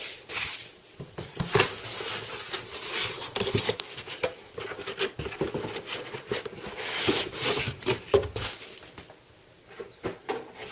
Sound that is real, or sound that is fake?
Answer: real